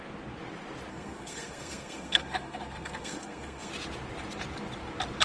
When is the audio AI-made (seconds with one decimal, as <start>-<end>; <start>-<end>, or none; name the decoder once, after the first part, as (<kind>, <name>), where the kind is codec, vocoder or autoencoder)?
0.9-3.7 (codec, SNAC)